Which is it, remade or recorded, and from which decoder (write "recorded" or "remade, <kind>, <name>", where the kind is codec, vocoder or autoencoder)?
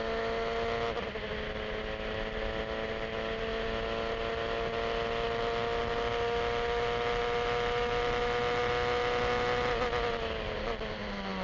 recorded